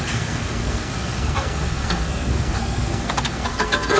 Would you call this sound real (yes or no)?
no